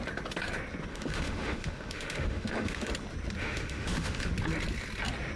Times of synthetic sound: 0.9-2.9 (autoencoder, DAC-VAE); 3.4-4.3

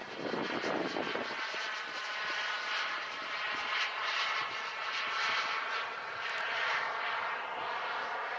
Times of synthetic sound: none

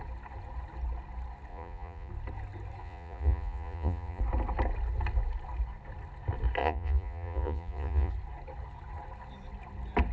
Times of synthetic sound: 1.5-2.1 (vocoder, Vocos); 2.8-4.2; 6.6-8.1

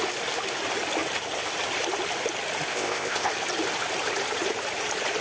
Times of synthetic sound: 2.7-3.3 (codec, ZipCodec)

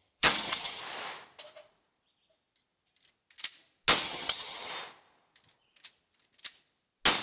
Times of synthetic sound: 0.0-0.8 (vocoder, HiFi-GAN); 4.0-4.7

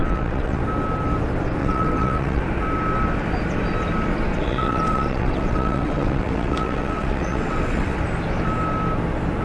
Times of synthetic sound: 0.0-0.6 (vocoder, WaveNeXt); 1.6-2.4; 4.3-8.0

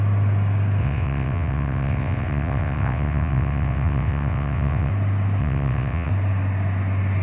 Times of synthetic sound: 0.8-4.9 (vocoder, WaveNeXt); 5.4-6.1

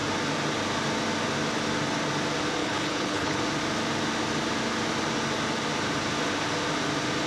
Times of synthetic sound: 2.6-3.4 (codec, HILCodec)